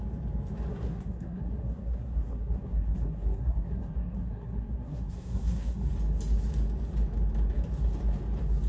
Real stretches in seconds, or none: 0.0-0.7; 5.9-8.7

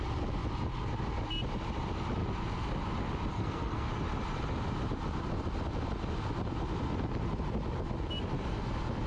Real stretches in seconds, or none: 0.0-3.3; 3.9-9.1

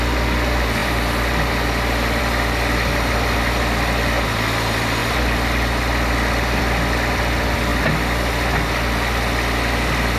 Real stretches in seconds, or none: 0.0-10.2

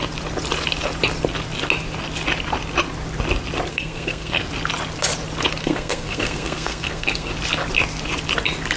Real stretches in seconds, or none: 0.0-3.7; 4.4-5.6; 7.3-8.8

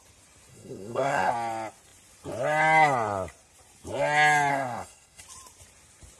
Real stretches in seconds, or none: 0.0-0.5; 1.3-4.5; 5.2-6.2

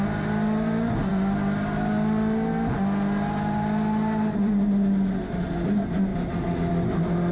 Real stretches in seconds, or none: 0.0-7.3